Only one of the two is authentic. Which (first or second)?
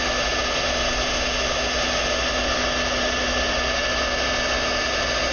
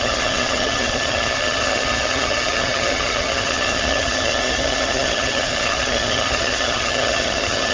first